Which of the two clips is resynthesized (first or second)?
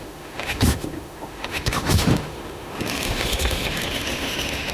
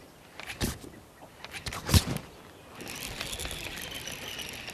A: first